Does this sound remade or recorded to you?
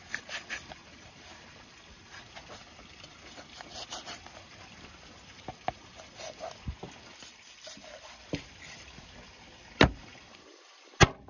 recorded